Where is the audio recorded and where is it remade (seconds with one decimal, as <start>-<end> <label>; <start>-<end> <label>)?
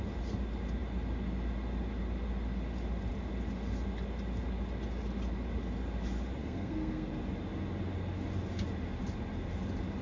0.0-6.4 recorded; 6.4-7.1 remade; 7.1-10.0 recorded